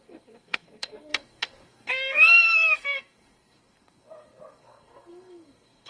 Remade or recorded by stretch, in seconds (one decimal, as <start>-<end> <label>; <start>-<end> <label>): 0.0-5.9 remade